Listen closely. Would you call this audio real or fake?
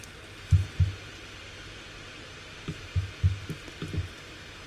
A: real